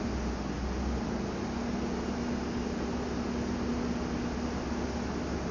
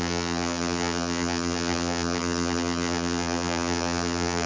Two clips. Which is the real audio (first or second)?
first